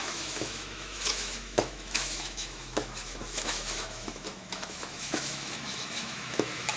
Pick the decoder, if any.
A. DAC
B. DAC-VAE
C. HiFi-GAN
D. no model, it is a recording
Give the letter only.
B